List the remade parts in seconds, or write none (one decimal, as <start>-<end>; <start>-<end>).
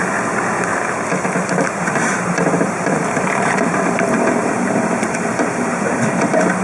0.0-0.7; 1.8-6.6